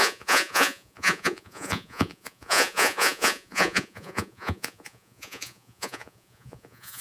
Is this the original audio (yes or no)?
no